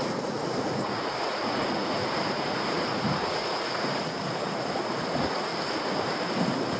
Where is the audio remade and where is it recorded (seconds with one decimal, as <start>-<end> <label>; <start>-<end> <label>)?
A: 0.0-5.5 remade; 5.5-6.8 recorded